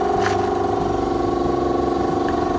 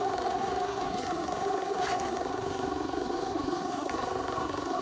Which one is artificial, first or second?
second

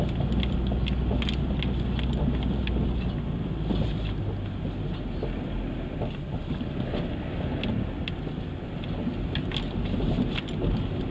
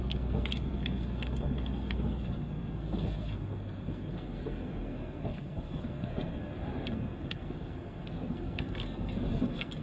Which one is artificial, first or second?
second